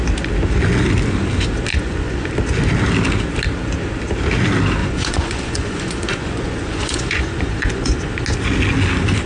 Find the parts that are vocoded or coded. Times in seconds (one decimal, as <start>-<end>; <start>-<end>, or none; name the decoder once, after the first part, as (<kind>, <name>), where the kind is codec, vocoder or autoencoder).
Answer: 1.7-2.3 (vocoder, Vocos); 4.8-8.1